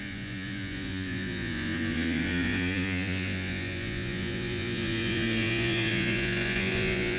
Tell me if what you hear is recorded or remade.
remade